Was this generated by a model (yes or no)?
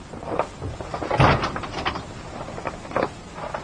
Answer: no